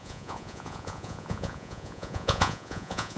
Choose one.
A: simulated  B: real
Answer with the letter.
A